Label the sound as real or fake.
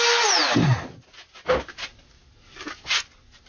real